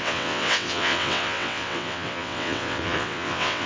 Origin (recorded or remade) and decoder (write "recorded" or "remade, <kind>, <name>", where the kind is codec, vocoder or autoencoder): remade, vocoder, WaveNeXt